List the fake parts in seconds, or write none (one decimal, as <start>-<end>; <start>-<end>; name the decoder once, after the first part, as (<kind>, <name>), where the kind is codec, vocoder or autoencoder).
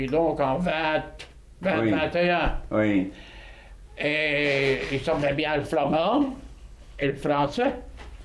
5.2-7.7 (codec, HILCodec)